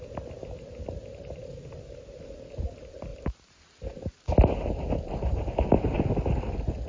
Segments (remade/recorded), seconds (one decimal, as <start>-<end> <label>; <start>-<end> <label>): 0.0-1.0 recorded; 1.0-1.6 remade; 1.6-3.1 recorded; 3.1-4.7 remade; 4.7-6.9 recorded